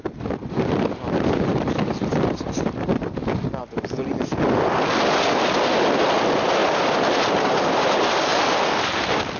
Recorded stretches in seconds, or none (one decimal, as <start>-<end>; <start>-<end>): 0.0-9.4